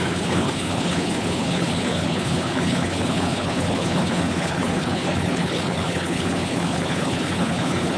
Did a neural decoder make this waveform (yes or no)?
yes